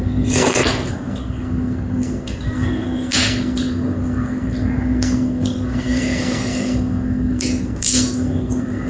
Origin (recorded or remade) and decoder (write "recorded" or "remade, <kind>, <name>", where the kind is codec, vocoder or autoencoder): remade, codec, SNAC